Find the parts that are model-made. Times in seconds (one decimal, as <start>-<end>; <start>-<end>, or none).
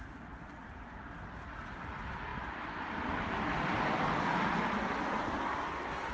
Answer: none